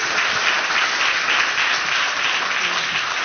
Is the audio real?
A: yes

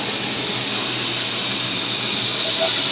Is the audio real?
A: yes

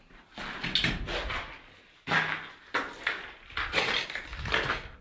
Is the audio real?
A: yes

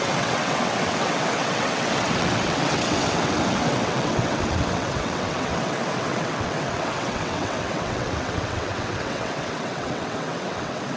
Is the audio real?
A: no